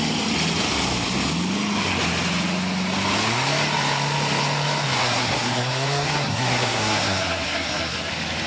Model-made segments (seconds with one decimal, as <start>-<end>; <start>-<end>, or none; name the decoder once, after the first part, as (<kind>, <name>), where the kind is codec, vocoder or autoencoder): 5.0-8.1 (codec, SNAC)